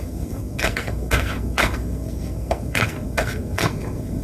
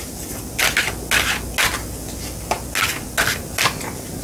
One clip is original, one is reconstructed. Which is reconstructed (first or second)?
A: first